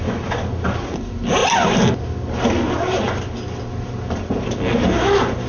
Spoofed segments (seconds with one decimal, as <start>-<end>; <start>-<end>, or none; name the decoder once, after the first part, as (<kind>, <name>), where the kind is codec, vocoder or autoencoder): none